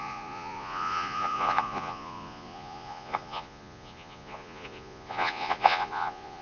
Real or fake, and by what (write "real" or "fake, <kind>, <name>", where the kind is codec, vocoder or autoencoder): fake, vocoder, Vocos